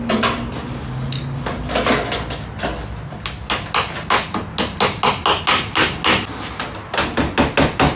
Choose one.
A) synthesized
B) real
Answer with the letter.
B